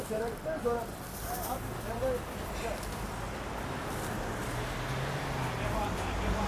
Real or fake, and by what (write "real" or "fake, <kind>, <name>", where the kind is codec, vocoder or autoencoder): real